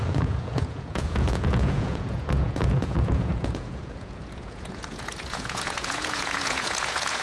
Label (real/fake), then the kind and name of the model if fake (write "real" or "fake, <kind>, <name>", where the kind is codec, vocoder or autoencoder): fake, vocoder, Vocos